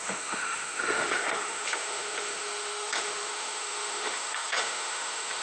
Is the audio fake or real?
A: fake